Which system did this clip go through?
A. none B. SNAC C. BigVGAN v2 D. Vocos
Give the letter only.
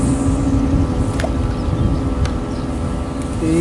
A